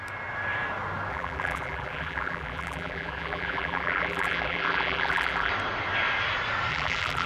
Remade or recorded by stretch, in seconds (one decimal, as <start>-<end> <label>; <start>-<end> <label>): 0.0-1.1 recorded; 1.1-5.5 remade; 5.5-6.7 recorded; 6.7-7.3 remade